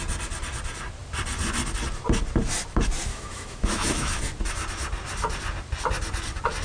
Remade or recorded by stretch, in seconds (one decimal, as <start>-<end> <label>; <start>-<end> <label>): 0.0-3.1 recorded; 3.1-4.2 remade; 4.2-6.6 recorded